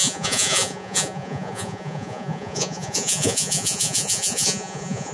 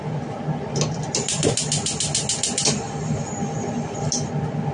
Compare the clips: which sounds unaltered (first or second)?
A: second